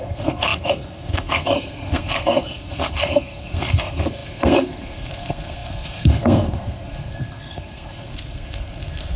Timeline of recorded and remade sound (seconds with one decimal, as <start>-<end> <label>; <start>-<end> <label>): 0.0-9.2 remade